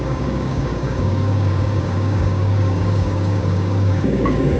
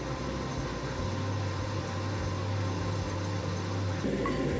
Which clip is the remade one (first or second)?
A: first